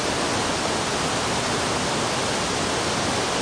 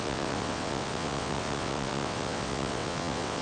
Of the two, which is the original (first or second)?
first